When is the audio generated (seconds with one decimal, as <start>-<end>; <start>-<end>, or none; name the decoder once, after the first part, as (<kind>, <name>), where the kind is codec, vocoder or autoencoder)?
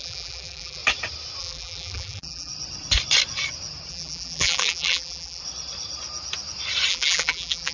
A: 0.0-0.8 (vocoder, BigVGAN v2); 1.4-2.5; 3.9-5.4; 6.9-7.7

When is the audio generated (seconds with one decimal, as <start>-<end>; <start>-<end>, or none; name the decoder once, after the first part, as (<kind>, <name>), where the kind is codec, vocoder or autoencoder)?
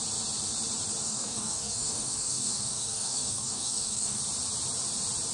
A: 1.0-4.2 (codec, DAC)